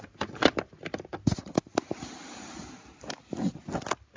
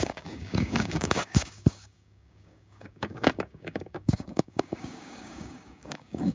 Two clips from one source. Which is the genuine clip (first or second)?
first